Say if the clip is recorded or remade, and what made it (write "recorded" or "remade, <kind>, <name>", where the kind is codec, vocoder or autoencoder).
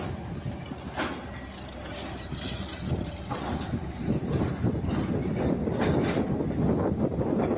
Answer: recorded